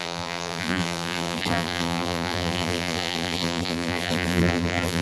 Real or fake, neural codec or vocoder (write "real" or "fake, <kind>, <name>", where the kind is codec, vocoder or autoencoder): fake, vocoder, BigVGAN v2